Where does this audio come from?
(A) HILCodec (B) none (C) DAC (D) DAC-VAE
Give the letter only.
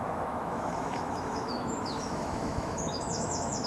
D